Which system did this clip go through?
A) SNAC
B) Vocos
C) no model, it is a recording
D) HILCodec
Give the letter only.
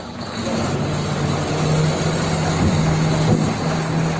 C